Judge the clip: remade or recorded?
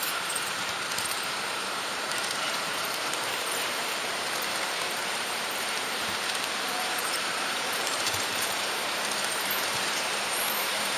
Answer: remade